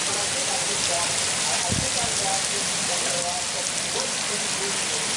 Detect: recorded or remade recorded